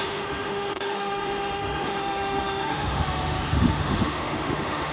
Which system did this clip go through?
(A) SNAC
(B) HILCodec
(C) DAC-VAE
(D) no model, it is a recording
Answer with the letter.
C